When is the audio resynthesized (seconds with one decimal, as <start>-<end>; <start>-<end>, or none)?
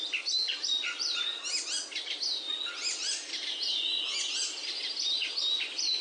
none